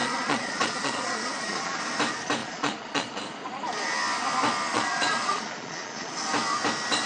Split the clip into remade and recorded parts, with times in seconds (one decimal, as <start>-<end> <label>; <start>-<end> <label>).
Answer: 0.0-1.8 remade; 1.8-2.4 recorded; 2.4-3.2 remade; 3.2-4.7 recorded; 4.7-6.1 remade; 6.1-7.1 recorded